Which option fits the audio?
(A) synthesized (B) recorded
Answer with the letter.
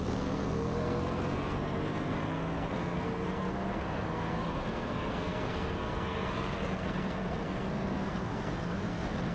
A